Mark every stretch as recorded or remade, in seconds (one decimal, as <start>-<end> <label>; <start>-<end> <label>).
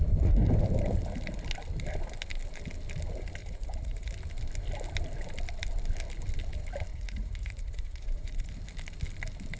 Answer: 0.0-3.4 recorded; 3.4-4.1 remade; 4.1-6.9 recorded; 6.9-8.5 remade; 8.5-9.6 recorded